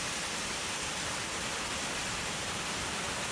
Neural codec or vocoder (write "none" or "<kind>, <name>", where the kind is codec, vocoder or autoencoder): none